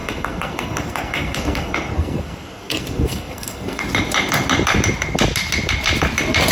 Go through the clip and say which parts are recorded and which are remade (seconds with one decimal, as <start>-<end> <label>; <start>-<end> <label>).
0.0-3.8 remade; 3.8-6.5 recorded

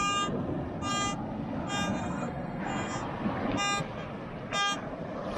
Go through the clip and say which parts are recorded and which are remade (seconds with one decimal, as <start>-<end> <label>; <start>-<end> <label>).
0.0-2.0 recorded; 2.0-2.6 remade; 2.6-5.4 recorded

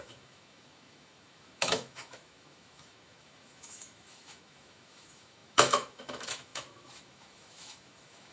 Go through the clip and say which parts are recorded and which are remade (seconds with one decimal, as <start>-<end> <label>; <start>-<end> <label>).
0.0-8.3 remade

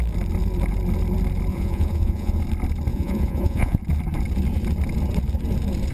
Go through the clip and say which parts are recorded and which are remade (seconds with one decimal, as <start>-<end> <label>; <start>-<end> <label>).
0.0-1.5 recorded; 1.5-2.4 remade; 2.4-2.9 recorded; 2.9-3.8 remade; 3.8-5.9 recorded